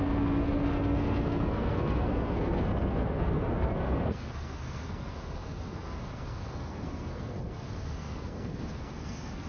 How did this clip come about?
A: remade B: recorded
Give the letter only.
A